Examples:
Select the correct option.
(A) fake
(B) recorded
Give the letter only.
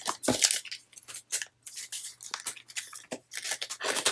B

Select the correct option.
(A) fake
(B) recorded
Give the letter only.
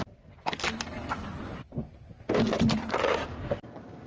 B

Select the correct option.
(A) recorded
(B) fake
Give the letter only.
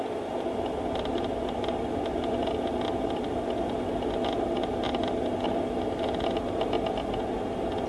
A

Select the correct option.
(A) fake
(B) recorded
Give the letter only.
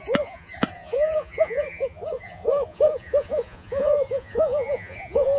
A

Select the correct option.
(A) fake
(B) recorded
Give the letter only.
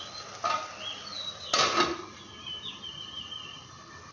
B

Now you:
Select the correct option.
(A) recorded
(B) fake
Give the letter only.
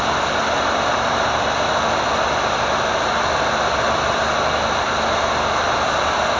B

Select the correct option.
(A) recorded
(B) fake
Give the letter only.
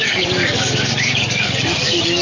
B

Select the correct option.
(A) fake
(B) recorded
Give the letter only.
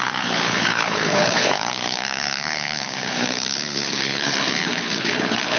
A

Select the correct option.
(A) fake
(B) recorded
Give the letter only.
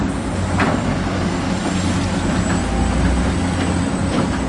B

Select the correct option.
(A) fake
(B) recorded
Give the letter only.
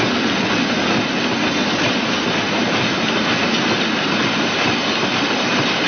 B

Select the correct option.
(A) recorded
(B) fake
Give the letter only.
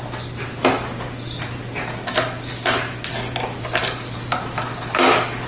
A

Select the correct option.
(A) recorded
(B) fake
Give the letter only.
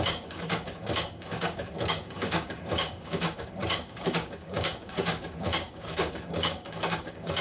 B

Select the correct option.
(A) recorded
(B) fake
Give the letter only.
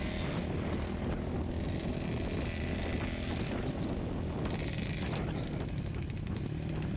A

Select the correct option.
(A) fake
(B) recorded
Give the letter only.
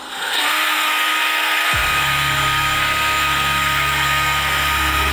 A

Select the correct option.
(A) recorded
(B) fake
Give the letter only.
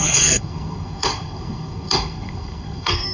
B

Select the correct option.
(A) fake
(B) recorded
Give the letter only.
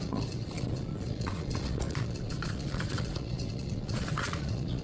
A